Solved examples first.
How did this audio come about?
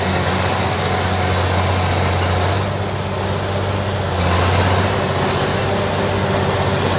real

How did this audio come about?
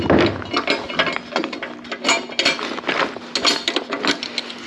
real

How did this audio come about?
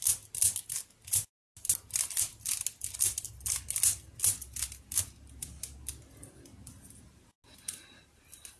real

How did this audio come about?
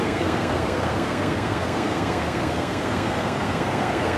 fake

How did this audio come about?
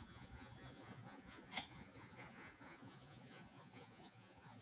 fake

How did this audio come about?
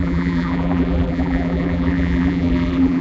fake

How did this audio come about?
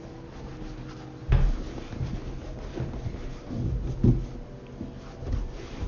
real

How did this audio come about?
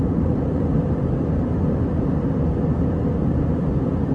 real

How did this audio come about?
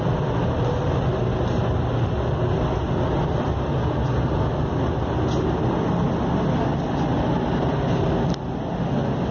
real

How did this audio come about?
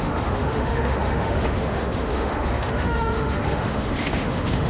fake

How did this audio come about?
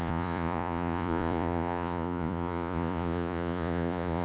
fake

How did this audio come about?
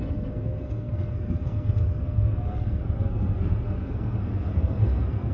fake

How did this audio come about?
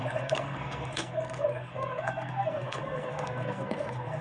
fake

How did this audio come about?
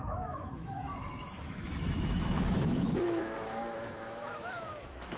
fake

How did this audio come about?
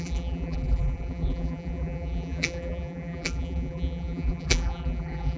fake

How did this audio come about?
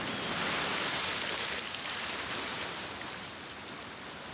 real